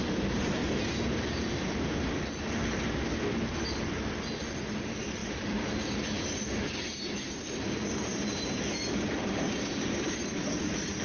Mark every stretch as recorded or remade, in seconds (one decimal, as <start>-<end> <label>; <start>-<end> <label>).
0.0-0.6 remade; 0.6-1.2 recorded; 1.2-2.6 remade; 2.6-4.5 recorded; 4.5-11.0 remade